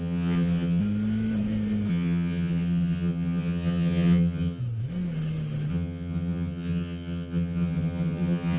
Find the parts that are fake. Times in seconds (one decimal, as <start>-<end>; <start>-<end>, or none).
0.0-0.8; 1.9-4.6; 5.7-8.6